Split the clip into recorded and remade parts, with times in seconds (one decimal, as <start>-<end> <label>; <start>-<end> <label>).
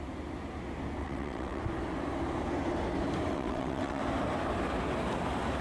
0.0-1.0 recorded; 1.0-1.6 remade; 1.6-3.3 recorded; 3.3-4.0 remade; 4.0-5.6 recorded